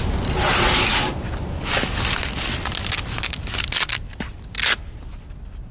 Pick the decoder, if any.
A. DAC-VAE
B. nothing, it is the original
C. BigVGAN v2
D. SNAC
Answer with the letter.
B